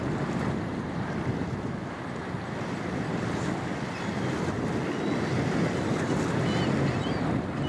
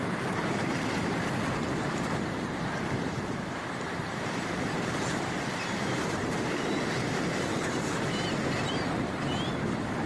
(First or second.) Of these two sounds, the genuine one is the first